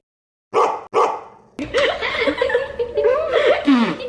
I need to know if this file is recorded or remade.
recorded